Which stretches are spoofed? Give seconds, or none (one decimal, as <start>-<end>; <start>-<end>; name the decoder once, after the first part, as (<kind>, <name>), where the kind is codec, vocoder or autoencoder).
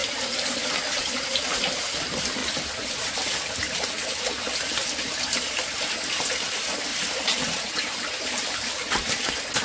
none